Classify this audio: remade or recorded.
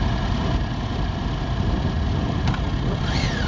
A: recorded